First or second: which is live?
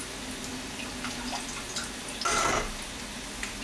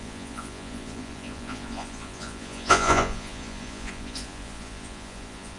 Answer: first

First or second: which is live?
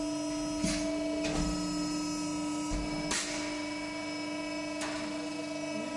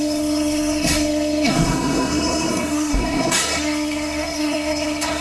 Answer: first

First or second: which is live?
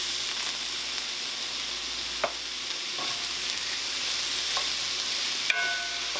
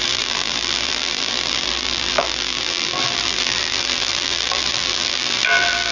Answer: first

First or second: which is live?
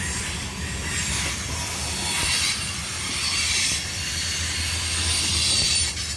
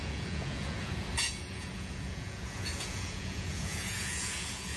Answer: first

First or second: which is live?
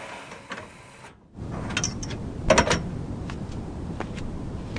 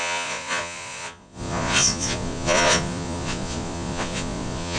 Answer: first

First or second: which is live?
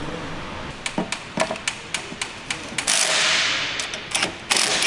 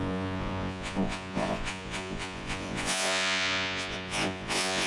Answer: first